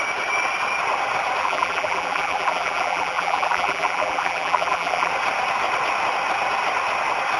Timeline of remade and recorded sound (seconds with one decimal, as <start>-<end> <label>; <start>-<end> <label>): 0.0-1.4 recorded; 1.4-5.1 remade; 5.1-7.4 recorded